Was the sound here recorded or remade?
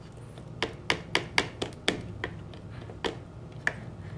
recorded